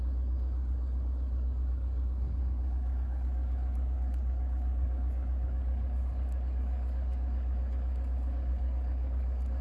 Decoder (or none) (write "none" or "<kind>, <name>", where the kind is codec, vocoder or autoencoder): codec, DAC